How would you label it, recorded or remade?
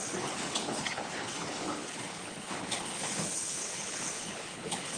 remade